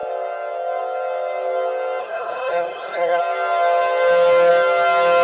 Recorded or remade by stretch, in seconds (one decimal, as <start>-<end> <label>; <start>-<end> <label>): 0.0-2.0 recorded; 2.0-3.2 remade; 3.2-5.2 recorded